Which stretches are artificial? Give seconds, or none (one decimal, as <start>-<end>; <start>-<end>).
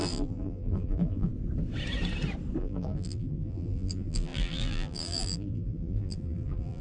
0.0-1.3; 2.6-6.8